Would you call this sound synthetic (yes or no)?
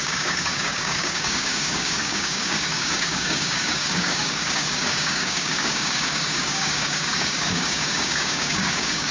yes